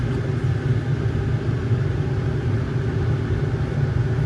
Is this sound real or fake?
real